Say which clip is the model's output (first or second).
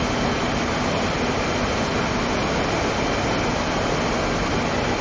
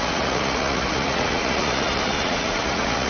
second